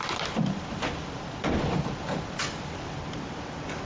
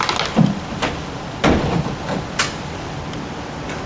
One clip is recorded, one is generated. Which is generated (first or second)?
first